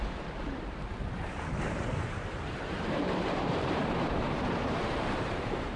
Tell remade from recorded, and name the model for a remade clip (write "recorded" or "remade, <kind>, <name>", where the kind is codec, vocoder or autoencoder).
remade, vocoder, BigVGAN v2